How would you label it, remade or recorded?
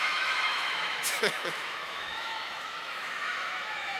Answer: remade